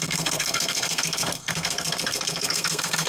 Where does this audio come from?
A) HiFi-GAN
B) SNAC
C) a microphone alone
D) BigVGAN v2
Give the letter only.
B